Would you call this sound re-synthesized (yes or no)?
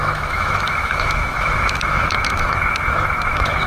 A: yes